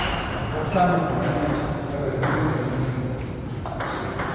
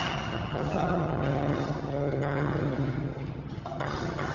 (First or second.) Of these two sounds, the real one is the first